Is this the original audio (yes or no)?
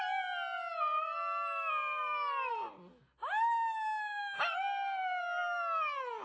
yes